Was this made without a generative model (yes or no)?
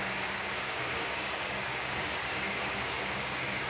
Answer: no